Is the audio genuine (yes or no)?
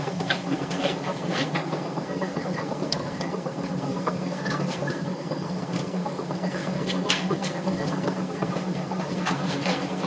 no